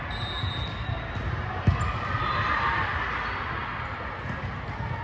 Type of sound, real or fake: real